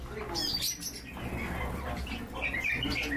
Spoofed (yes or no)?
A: no